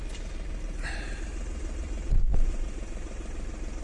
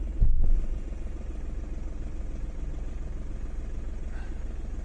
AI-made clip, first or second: first